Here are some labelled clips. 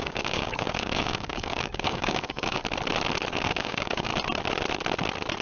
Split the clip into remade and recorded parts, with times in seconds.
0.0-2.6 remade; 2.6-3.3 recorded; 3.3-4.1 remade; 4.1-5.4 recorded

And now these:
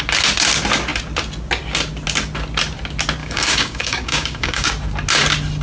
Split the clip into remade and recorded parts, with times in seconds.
0.0-3.2 recorded; 3.2-4.7 remade; 4.7-5.6 recorded

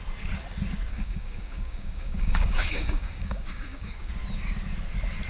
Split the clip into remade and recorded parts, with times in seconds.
0.0-0.9 recorded; 0.9-4.1 remade; 4.1-5.3 recorded

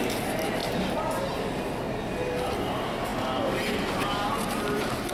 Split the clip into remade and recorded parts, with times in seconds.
0.0-5.1 recorded